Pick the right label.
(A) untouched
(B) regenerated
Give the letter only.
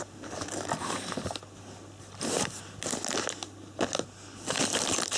A